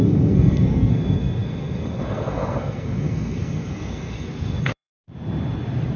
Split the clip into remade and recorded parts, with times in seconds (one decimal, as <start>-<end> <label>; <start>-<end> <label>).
0.0-4.9 remade; 4.9-6.0 recorded